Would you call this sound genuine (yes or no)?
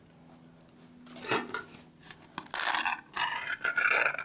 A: yes